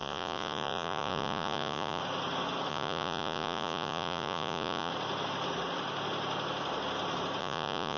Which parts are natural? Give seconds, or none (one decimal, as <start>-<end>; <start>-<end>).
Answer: 2.0-2.7; 4.9-7.4